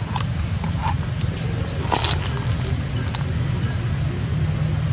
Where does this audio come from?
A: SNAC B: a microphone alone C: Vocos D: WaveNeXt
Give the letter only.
B